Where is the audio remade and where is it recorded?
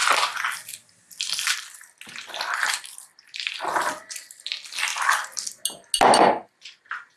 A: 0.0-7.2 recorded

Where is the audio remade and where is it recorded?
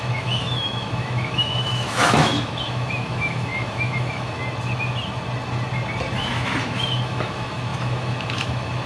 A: 0.0-4.4 remade; 4.4-6.2 recorded; 6.2-8.9 remade